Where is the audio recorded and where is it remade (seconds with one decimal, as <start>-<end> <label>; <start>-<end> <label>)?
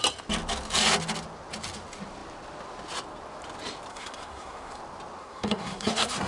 0.0-3.9 recorded; 3.9-4.8 remade; 4.8-5.2 recorded; 5.2-6.3 remade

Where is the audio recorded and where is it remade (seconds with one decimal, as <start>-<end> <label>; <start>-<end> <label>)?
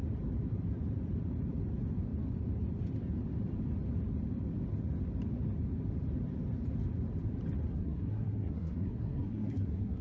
0.0-7.7 recorded; 7.7-10.0 remade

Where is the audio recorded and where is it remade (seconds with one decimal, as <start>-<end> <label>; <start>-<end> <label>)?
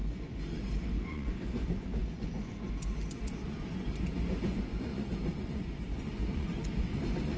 0.0-7.4 remade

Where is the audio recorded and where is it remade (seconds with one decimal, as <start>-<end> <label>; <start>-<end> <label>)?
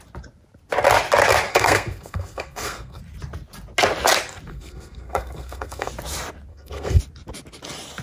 0.0-1.5 recorded; 1.5-3.0 remade; 3.0-4.5 recorded; 4.5-5.9 remade; 5.9-6.5 recorded; 6.5-7.0 remade; 7.0-8.0 recorded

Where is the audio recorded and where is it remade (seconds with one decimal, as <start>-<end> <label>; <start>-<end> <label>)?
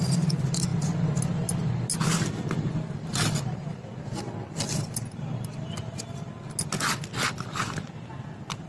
0.0-2.1 recorded; 2.1-5.8 remade; 5.8-8.7 recorded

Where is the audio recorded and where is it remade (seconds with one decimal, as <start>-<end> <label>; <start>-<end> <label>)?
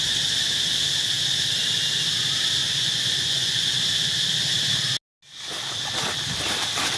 0.0-2.6 recorded; 2.6-3.9 remade; 3.9-7.0 recorded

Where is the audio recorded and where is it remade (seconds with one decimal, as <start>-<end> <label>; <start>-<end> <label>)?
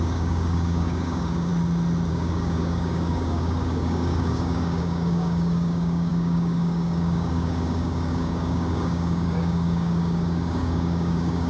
0.0-1.5 remade; 1.5-2.1 recorded; 2.1-11.5 remade